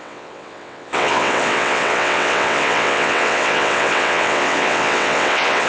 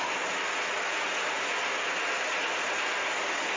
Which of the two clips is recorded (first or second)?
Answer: second